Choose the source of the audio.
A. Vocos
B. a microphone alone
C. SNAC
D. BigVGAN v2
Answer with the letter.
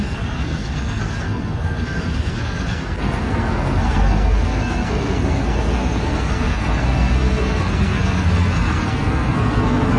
C